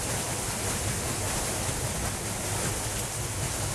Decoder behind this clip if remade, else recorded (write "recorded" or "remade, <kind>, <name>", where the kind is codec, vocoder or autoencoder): remade, vocoder, BigVGAN v2